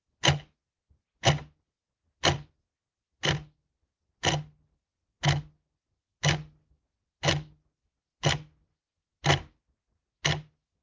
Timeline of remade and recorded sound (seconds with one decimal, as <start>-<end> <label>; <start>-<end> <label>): 0.0-10.8 recorded